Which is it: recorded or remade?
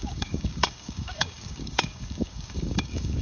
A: remade